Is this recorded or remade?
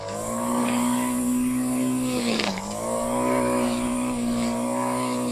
remade